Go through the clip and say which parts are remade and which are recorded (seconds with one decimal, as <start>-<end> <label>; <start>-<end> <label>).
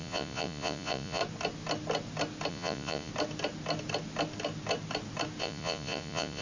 0.0-1.2 remade; 1.2-2.5 recorded; 2.5-3.1 remade; 3.1-5.4 recorded; 5.4-6.4 remade